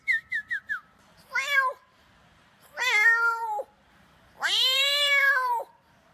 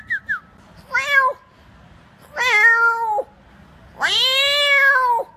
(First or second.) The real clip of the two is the second